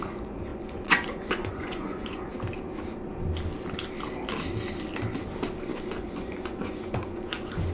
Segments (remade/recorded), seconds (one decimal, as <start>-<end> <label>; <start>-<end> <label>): 0.0-2.3 remade; 2.3-6.0 recorded; 6.0-7.7 remade